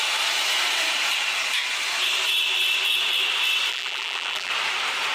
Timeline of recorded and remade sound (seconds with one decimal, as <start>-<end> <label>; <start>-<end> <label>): 0.0-3.7 recorded; 3.7-4.5 remade; 4.5-5.1 recorded